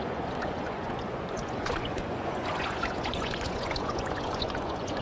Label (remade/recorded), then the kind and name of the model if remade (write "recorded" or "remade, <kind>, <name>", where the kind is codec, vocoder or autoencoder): remade, vocoder, Vocos